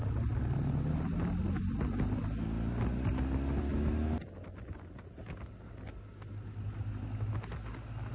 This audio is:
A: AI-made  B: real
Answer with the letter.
B